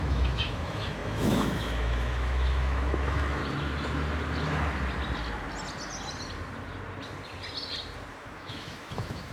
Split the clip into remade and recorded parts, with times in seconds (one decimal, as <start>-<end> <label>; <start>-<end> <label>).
0.0-3.4 remade; 3.4-8.1 recorded; 8.1-9.3 remade